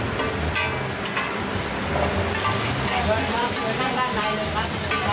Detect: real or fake real